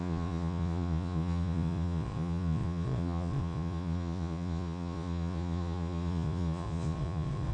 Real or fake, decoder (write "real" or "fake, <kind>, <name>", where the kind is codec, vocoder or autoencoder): fake, vocoder, Vocos